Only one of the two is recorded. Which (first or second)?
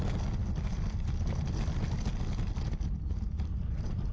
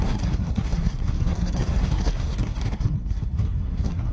first